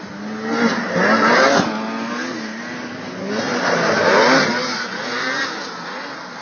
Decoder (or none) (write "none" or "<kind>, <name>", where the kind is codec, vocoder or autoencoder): none